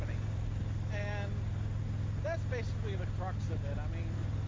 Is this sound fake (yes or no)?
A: no